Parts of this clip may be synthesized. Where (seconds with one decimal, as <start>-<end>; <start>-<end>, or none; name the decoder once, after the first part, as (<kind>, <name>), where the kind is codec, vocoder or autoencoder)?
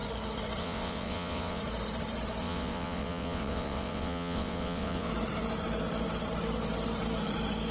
0.6-1.6 (vocoder, WaveNeXt); 2.4-5.1